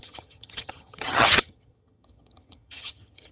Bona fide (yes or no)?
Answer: no